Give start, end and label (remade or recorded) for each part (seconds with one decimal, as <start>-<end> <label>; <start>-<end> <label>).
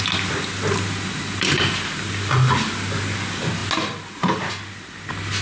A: 0.0-5.4 recorded